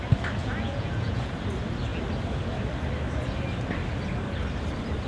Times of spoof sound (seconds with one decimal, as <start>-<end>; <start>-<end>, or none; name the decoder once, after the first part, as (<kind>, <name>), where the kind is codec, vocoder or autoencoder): 0.4-1.3 (vocoder, Vocos)